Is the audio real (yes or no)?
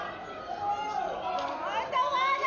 yes